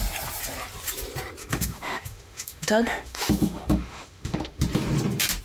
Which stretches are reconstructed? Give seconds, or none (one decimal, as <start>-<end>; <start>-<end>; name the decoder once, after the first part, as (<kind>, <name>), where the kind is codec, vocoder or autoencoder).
1.4-4.6 (autoencoder, DAC-VAE)